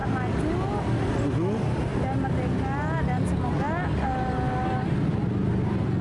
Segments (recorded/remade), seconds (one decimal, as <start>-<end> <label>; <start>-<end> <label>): 0.0-6.0 recorded